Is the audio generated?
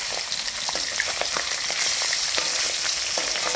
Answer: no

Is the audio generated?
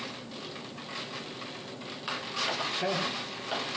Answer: no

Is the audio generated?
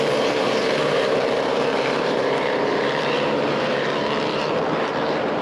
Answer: yes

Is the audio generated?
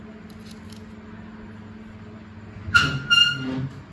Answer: no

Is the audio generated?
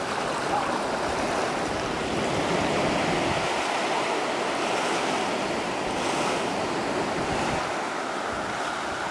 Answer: no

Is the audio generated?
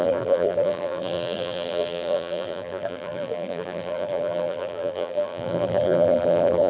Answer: yes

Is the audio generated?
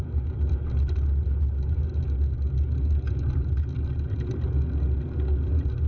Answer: no